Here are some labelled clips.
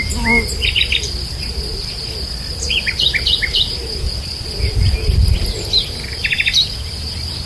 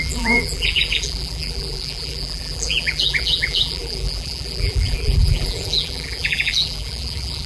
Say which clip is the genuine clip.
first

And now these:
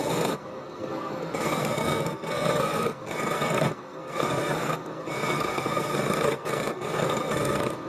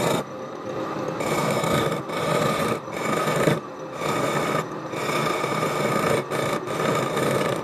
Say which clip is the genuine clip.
second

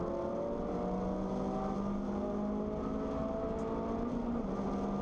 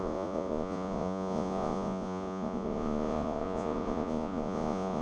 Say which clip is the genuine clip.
first